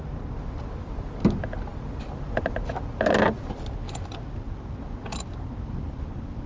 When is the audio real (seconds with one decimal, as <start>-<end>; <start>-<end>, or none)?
0.0-1.7; 2.7-6.5